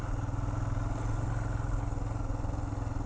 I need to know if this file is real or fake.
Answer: real